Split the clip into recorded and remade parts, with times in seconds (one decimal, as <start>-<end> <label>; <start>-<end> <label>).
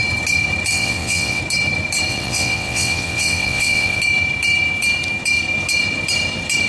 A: 0.0-0.7 recorded; 0.7-1.4 remade; 1.4-2.1 recorded; 2.1-4.0 remade; 4.0-6.7 recorded